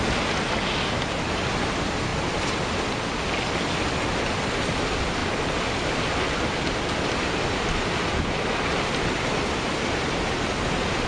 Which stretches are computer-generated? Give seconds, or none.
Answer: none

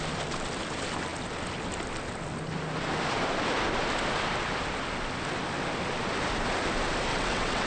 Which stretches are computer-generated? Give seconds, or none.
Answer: 7.1-7.7 (vocoder, WaveNeXt)

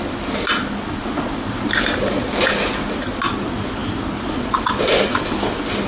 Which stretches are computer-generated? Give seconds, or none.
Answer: none

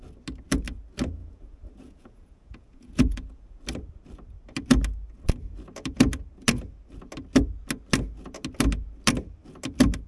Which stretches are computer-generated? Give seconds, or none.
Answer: 1.2-3.6 (vocoder, Vocos)

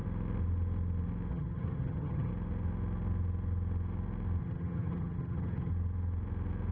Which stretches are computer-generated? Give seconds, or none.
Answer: 1.3-2.3 (vocoder, HiFi-GAN); 4.4-5.7

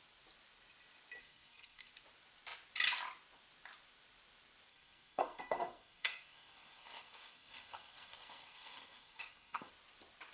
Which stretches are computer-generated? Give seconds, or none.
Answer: 1.2-1.9 (codec, SNAC); 4.7-9.7

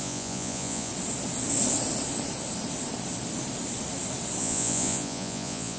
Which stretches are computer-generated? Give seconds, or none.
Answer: 0.0-0.9 (vocoder, Vocos); 4.4-5.8